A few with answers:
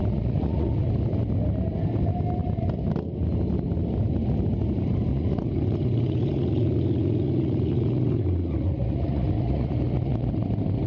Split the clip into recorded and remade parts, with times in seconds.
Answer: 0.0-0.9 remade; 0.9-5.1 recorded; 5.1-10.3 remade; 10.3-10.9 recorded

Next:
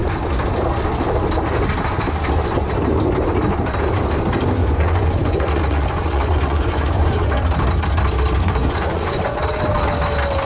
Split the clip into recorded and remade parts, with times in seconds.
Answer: 0.0-4.6 recorded; 4.6-7.3 remade; 7.3-8.4 recorded; 8.4-9.6 remade; 9.6-10.4 recorded

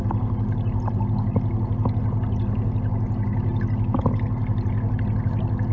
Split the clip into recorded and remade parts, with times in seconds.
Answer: 0.0-5.7 recorded

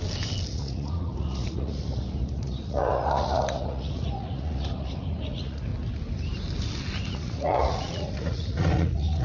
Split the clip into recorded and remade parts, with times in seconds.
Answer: 0.0-0.5 recorded; 0.5-5.7 remade; 5.7-7.1 recorded; 7.1-9.2 remade

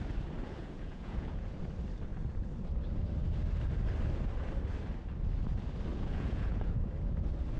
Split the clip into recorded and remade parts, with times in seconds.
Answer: 0.0-0.6 recorded; 0.6-1.6 remade; 1.6-5.9 recorded; 5.9-6.9 remade; 6.9-7.6 recorded

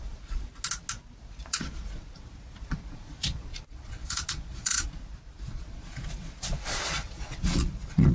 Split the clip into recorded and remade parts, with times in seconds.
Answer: 0.0-0.5 remade; 0.5-1.2 recorded; 1.2-8.1 remade

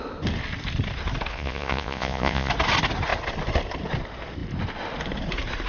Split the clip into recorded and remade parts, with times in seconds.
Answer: 0.0-1.3 recorded; 1.3-2.5 remade; 2.5-5.7 recorded

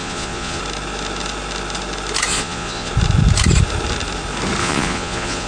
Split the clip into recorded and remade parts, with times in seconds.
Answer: 0.0-0.6 remade; 0.6-2.3 recorded; 2.3-2.9 remade; 2.9-4.6 recorded; 4.6-5.5 remade